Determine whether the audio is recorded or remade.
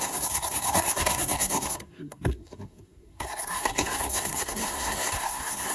remade